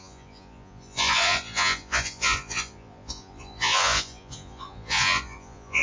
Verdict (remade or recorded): remade